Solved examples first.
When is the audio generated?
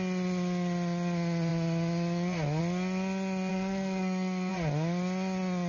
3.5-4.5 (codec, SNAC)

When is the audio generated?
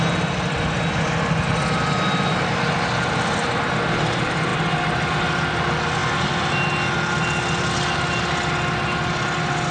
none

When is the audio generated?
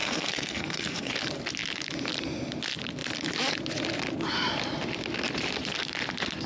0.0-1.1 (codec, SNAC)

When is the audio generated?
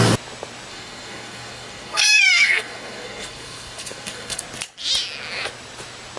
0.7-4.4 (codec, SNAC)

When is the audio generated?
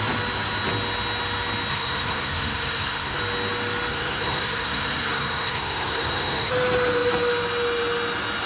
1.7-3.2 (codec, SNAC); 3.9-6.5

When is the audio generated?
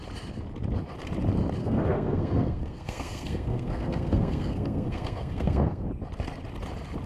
1.6-5.9 (codec, SNAC)